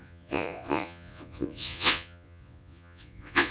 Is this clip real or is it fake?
fake